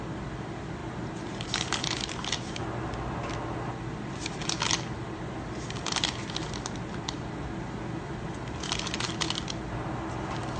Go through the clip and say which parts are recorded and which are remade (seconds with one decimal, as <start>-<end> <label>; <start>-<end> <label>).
0.0-10.6 recorded